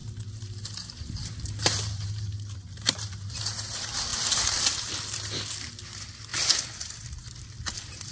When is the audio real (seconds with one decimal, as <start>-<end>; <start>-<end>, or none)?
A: 3.4-4.1; 4.9-8.1